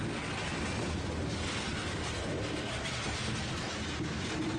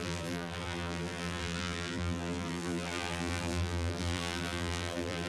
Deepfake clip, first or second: second